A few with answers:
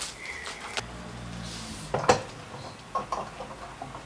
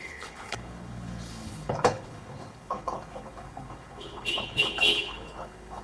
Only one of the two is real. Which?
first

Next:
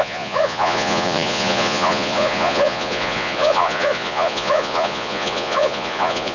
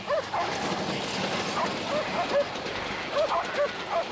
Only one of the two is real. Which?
second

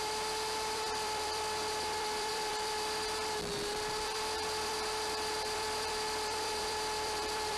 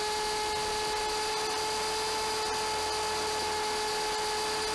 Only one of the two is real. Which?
second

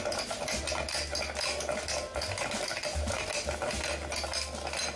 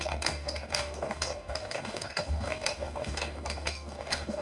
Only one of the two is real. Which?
first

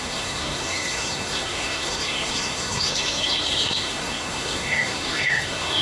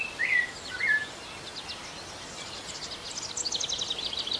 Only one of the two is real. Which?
second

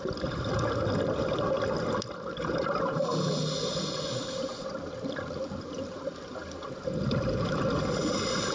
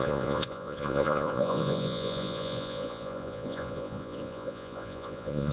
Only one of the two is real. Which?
first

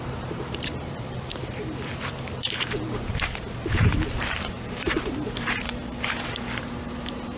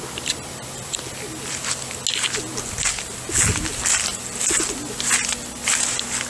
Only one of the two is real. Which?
second